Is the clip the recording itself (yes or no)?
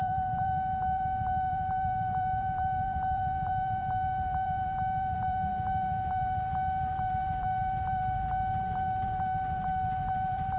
no